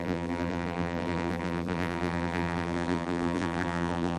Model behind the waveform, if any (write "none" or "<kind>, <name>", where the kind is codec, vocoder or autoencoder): vocoder, BigVGAN v2